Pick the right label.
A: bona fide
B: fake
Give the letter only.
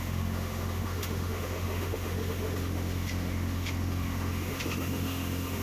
B